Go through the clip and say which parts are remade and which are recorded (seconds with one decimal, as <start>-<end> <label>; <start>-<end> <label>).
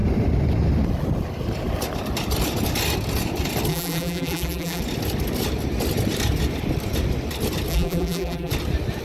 0.0-3.7 recorded; 3.7-4.8 remade; 4.8-7.7 recorded; 7.7-8.5 remade; 8.5-9.0 recorded